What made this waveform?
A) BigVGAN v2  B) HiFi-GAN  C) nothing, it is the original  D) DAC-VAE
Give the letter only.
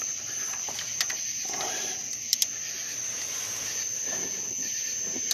A